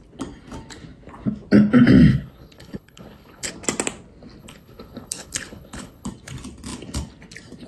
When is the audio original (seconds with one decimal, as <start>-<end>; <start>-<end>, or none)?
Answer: 0.0-2.1; 3.5-4.4; 6.1-7.7